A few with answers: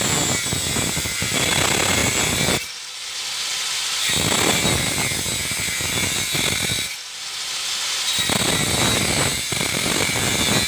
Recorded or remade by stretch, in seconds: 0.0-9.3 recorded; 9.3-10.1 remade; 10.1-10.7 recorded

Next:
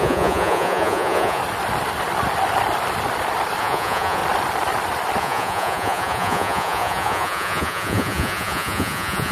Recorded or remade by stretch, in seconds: 0.0-1.4 remade; 1.4-3.6 recorded; 3.6-4.2 remade; 4.2-5.2 recorded; 5.2-9.3 remade

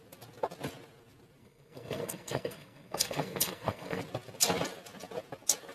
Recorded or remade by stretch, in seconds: 0.0-1.4 recorded; 1.4-4.0 remade; 4.0-5.7 recorded

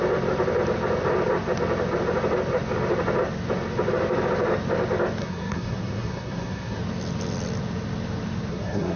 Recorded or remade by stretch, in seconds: 0.0-5.2 recorded; 5.2-6.8 remade; 6.8-8.5 recorded; 8.5-9.0 remade

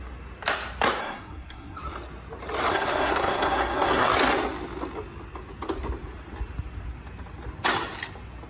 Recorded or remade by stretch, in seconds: 0.0-1.0 recorded; 1.0-1.8 remade; 1.8-2.7 recorded; 2.7-4.1 remade; 4.1-8.5 recorded

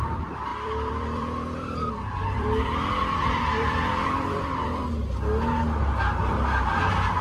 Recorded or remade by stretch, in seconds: 0.0-4.8 remade; 4.8-6.8 recorded; 6.8-7.2 remade